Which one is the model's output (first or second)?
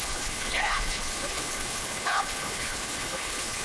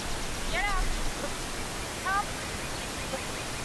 first